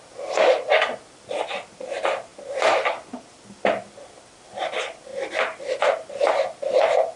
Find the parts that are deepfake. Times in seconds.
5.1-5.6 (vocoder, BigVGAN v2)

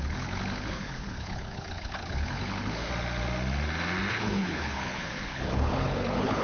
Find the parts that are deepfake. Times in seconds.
0.0-2.9 (codec, HILCodec); 4.1-6.4

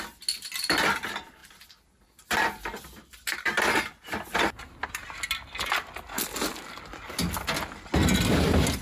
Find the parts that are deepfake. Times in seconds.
none

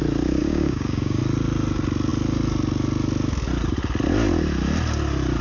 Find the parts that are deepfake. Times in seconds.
0.4-1.2 (codec, DAC)

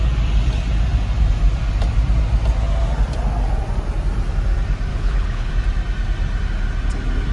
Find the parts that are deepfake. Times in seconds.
4.9-5.5 (codec, HILCodec)

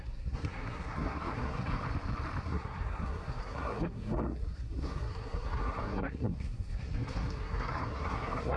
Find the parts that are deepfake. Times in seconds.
0.0-1.8 (codec, SNAC); 2.4-8.6